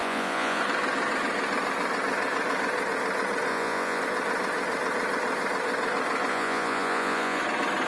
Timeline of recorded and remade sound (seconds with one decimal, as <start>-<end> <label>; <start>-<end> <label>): 0.0-0.6 remade; 0.6-3.5 recorded; 3.5-4.0 remade; 4.0-6.3 recorded; 6.3-7.4 remade; 7.4-7.9 recorded